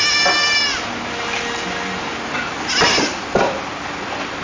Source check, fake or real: real